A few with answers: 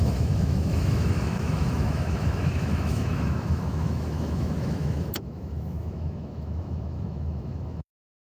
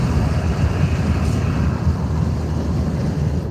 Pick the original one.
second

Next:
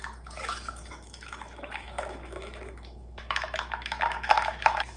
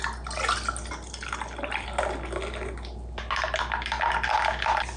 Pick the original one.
second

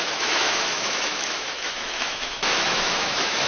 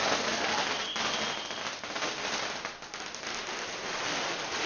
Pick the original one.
second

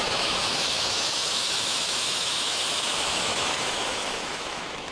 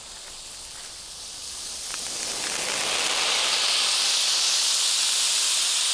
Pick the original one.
second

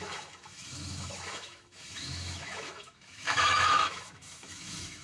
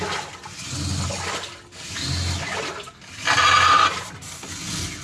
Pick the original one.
second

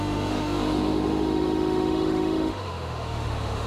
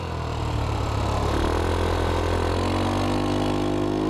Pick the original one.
second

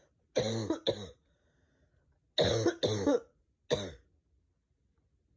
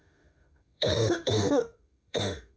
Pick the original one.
first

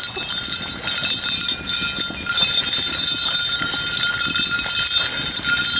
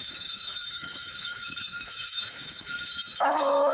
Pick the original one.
first